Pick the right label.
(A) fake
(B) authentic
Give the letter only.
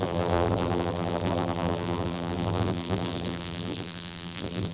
A